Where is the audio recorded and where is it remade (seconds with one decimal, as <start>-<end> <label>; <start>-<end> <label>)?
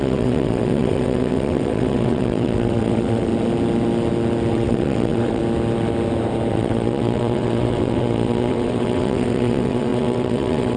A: 0.0-3.3 remade; 3.3-4.5 recorded; 4.5-5.4 remade; 5.4-6.5 recorded; 6.5-10.8 remade